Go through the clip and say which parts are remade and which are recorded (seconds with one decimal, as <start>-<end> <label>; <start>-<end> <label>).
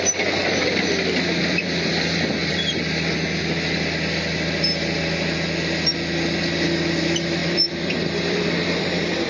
0.0-0.4 recorded; 0.4-1.9 remade; 1.9-2.4 recorded; 2.4-2.9 remade; 2.9-7.4 recorded; 7.4-9.3 remade